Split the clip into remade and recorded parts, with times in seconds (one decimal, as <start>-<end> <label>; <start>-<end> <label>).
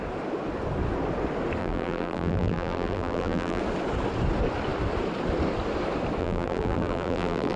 0.0-1.6 recorded; 1.6-3.6 remade; 3.6-6.2 recorded; 6.2-7.6 remade